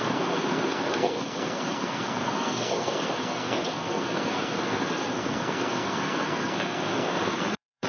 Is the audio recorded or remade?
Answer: remade